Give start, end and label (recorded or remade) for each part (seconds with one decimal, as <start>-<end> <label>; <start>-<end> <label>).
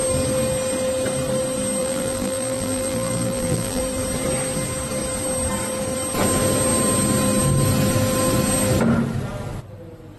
0.0-1.8 recorded; 1.8-3.8 remade; 3.8-10.2 recorded